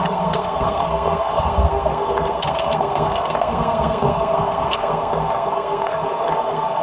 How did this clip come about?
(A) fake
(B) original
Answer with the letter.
A